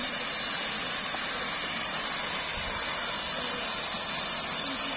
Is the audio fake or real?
real